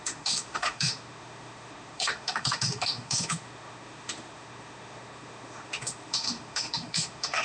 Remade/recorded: remade